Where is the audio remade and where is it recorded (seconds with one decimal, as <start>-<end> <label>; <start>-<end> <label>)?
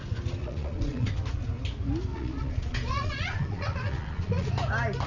0.0-0.4 recorded; 0.4-1.1 remade; 1.1-2.1 recorded; 2.1-4.5 remade; 4.5-5.1 recorded